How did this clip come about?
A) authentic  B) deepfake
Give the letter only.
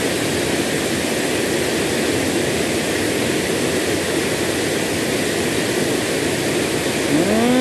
A